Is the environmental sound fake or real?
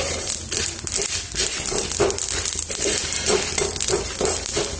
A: real